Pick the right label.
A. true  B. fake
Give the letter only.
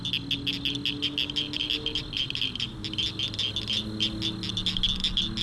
A